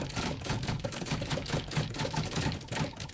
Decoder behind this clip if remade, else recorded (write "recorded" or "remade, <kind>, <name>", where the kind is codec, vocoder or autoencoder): remade, codec, DAC